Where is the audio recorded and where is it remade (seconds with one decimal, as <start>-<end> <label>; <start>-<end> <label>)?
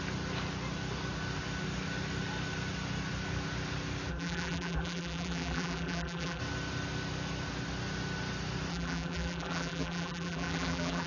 0.0-4.1 recorded; 4.1-6.4 remade; 6.4-8.7 recorded; 8.7-11.1 remade